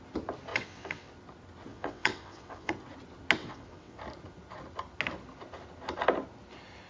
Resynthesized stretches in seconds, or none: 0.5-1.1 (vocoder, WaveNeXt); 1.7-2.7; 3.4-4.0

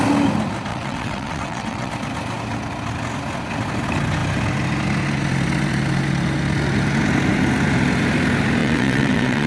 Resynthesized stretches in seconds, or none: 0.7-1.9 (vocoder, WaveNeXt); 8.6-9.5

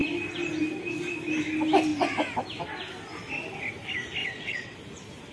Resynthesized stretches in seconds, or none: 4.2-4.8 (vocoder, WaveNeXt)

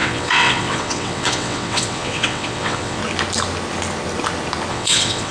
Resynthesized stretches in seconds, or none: 0.0-3.0 (vocoder, WaveNeXt); 4.7-5.3

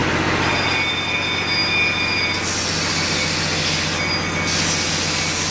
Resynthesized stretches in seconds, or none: none